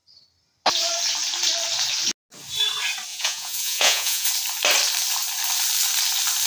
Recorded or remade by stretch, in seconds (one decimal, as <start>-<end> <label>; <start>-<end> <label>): 0.0-3.1 recorded; 3.1-4.3 remade; 4.3-6.5 recorded